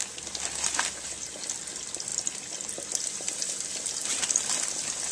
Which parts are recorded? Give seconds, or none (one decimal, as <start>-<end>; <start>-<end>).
0.0-5.1